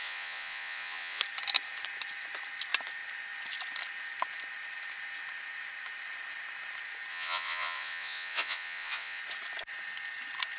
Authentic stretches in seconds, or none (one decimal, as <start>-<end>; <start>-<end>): 1.2-7.1; 9.2-10.6